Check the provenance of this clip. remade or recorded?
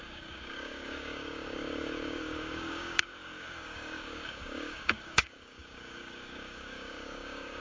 remade